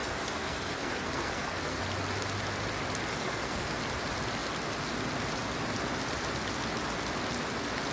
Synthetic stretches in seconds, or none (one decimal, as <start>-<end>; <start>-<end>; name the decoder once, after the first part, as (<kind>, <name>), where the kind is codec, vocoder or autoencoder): 0.0-1.8 (codec, SNAC); 3.1-3.8